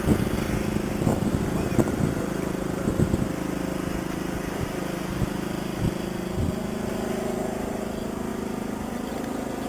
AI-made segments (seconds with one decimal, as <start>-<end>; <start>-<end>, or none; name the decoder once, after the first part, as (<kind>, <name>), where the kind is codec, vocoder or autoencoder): 8.3-9.1 (vocoder, BigVGAN v2)